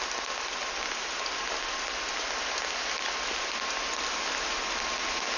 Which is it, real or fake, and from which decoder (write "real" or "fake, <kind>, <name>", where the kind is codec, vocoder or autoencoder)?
real